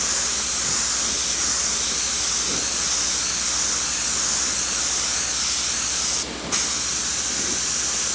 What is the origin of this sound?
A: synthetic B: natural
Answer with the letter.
B